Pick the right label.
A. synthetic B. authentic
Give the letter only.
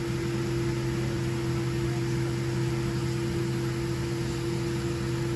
B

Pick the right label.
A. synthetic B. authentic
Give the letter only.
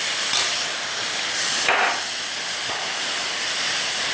B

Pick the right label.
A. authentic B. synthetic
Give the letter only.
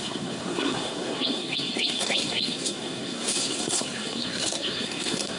B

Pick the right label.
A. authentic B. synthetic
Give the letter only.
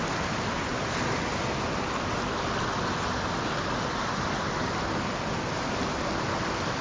A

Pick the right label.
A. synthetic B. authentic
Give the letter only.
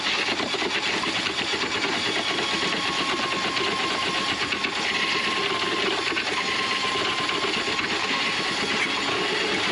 B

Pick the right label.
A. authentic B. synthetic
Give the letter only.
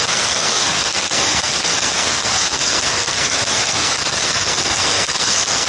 B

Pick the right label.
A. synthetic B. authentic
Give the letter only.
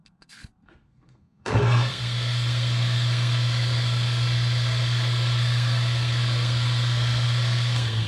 A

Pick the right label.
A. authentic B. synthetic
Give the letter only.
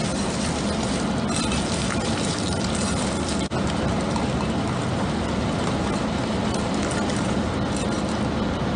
A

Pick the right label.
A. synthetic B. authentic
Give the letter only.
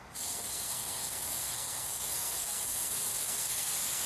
A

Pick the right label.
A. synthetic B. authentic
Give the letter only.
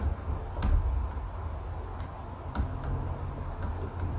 B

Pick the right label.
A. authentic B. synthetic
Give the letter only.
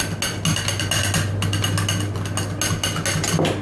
A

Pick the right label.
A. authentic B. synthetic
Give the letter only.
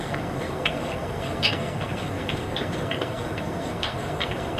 B